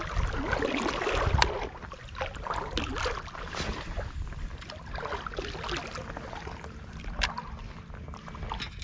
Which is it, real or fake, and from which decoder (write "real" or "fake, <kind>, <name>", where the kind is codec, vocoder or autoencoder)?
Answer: real